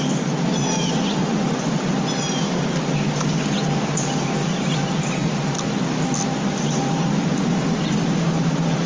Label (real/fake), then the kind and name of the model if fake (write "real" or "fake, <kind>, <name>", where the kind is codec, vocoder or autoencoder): real